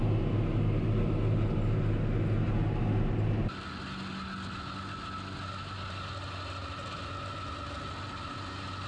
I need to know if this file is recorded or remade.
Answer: recorded